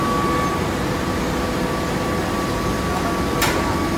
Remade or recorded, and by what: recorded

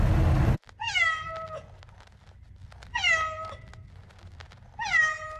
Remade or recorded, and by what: recorded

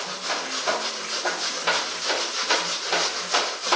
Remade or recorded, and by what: recorded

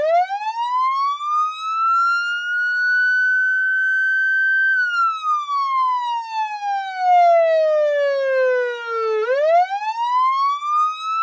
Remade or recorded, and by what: recorded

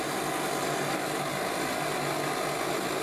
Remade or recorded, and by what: recorded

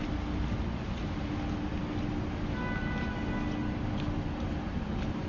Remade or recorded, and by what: recorded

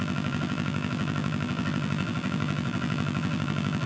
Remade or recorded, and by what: remade, vocoder, BigVGAN v2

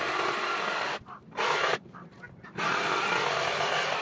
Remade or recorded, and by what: remade, vocoder, BigVGAN v2